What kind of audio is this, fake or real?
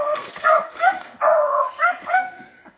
fake